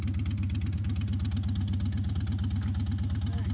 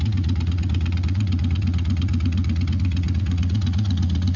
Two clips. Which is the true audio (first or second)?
first